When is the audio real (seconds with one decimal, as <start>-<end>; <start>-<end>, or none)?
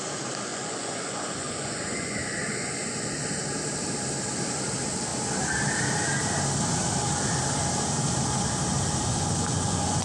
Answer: 0.0-0.5; 3.2-9.1